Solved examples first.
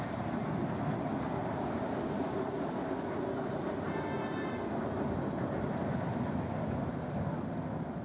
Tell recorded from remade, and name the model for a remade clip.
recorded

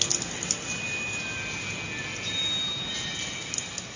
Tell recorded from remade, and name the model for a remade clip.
recorded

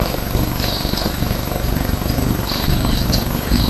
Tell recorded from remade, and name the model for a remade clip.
remade, codec, DAC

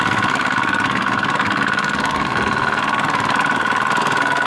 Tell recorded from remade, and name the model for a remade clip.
remade, codec, SNAC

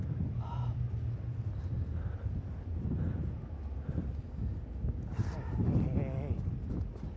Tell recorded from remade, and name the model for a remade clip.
recorded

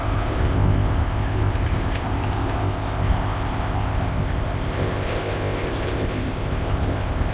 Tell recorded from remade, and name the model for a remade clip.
remade, codec, ZipCodec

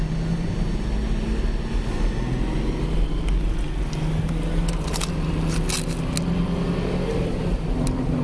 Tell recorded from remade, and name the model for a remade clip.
recorded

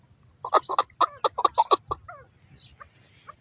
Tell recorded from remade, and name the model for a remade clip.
recorded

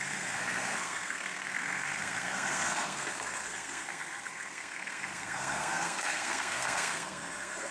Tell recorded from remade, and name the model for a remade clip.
remade, codec, SNAC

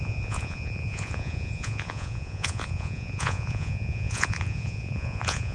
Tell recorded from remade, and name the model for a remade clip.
remade, vocoder, Vocos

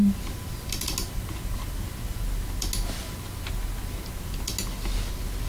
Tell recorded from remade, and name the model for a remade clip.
recorded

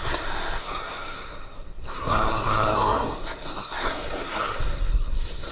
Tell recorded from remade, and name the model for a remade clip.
remade, codec, SNAC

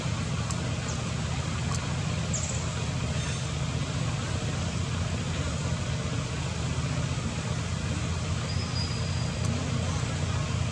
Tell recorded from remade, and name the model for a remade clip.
recorded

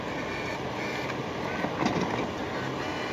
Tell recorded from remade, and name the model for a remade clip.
recorded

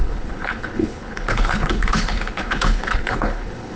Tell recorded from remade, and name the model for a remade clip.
remade, codec, HILCodec